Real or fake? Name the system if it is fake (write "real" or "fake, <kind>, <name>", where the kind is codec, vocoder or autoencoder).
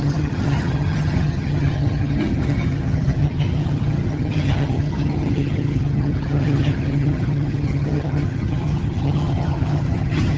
fake, vocoder, HiFi-GAN